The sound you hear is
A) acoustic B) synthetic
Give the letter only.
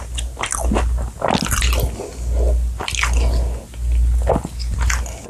A